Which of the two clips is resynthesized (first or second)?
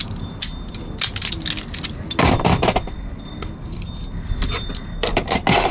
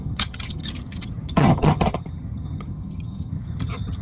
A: second